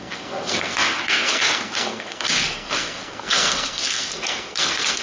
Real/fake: fake